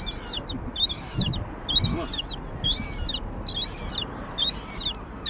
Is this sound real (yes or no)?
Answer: yes